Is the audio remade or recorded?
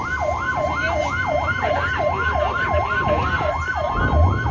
recorded